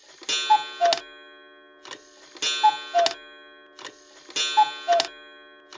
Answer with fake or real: real